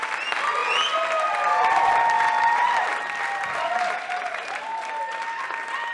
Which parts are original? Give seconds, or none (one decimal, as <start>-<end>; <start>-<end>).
0.0-5.9